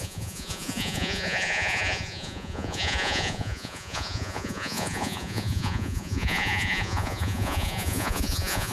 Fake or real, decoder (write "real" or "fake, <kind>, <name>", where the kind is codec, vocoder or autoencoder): fake, vocoder, Vocos